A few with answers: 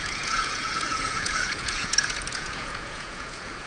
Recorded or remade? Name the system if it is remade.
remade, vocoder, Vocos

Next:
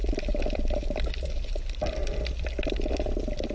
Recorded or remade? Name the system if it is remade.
recorded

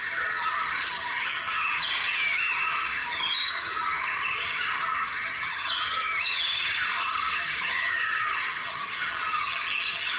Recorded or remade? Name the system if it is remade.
remade, vocoder, HiFi-GAN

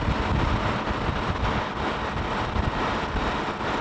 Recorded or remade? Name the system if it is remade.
recorded